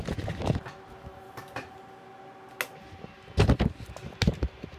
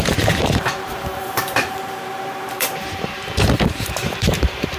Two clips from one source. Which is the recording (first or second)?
first